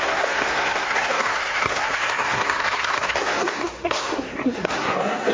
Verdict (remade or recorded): remade